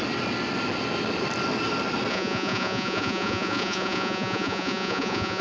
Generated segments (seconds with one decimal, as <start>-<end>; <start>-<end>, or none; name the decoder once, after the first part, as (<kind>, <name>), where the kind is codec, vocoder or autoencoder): 2.1-5.4 (vocoder, Vocos)